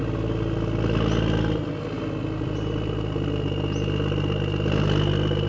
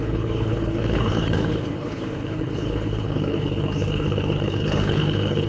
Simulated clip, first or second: second